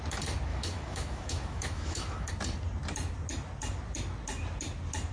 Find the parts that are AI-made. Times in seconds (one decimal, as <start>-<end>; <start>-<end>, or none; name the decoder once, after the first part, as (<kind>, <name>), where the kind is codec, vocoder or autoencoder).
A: 0.5-2.3 (autoencoder, DAC-VAE)